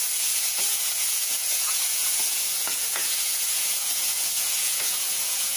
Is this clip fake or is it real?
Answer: fake